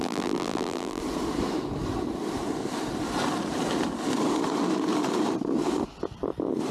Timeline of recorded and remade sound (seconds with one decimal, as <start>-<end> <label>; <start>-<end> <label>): 0.0-1.0 remade; 1.0-6.7 recorded